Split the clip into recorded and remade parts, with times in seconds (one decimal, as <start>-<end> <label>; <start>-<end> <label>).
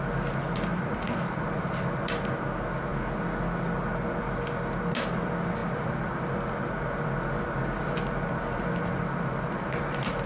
0.0-0.7 recorded; 0.7-2.4 remade; 2.4-5.6 recorded; 5.6-10.3 remade